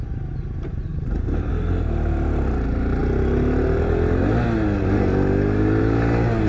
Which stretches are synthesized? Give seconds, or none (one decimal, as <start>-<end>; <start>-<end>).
0.9-1.5